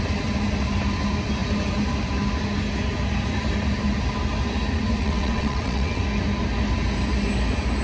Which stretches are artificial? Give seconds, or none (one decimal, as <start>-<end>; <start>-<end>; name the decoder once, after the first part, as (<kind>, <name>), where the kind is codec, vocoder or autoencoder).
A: 5.0-6.0 (vocoder, WaveNeXt)